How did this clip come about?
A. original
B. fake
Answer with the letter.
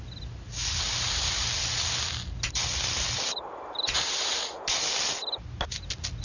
A